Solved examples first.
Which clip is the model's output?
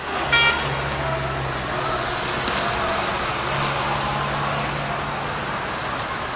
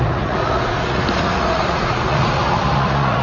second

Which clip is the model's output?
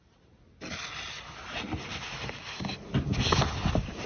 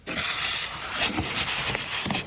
second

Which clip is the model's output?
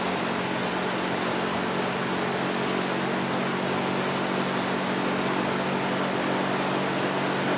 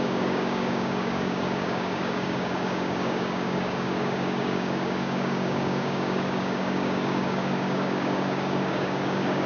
second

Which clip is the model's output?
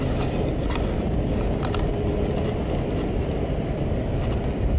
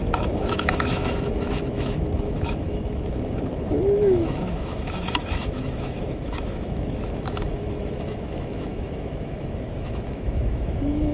second